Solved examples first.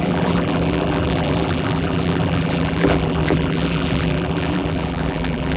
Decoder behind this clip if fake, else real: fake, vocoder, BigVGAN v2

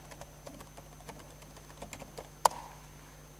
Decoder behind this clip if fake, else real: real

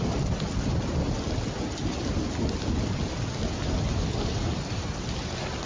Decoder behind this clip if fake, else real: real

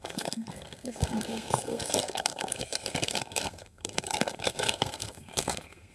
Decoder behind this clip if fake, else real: fake, codec, SNAC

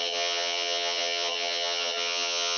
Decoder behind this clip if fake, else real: fake, vocoder, HiFi-GAN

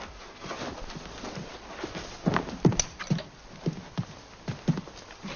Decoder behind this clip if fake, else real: real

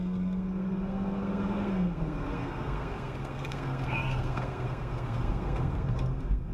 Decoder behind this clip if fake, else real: fake, codec, SNAC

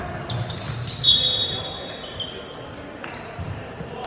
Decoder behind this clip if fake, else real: real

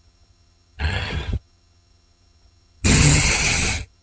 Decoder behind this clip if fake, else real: fake, vocoder, HiFi-GAN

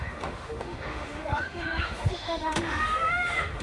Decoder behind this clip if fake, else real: fake, autoencoder, DAC-VAE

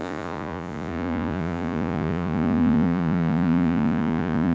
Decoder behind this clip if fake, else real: fake, vocoder, Vocos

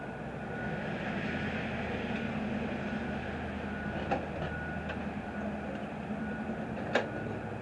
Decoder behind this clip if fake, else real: real